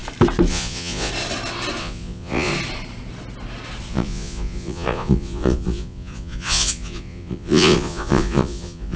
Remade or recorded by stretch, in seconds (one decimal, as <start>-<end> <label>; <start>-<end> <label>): 0.0-0.5 recorded; 0.5-1.1 remade; 1.1-1.8 recorded; 1.8-2.5 remade; 2.5-3.9 recorded; 3.9-9.0 remade